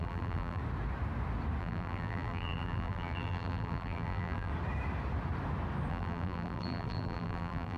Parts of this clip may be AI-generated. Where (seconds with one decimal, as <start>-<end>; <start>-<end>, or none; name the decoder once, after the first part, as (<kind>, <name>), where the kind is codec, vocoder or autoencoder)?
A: 0.0-0.6 (vocoder, BigVGAN v2); 1.6-4.5; 5.9-7.8

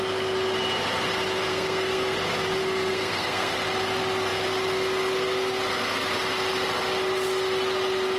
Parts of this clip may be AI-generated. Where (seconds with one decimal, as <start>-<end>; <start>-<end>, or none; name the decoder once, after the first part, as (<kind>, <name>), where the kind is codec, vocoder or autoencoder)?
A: 1.5-2.2 (codec, SNAC); 2.6-3.5

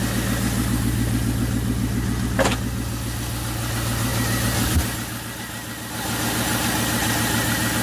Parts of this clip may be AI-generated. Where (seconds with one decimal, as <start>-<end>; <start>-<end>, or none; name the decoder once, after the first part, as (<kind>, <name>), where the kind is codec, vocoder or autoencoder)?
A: none

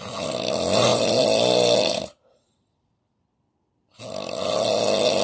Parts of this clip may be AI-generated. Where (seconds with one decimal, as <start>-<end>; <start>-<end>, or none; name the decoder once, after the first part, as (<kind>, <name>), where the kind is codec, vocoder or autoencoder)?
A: 0.9-4.0 (vocoder, BigVGAN v2)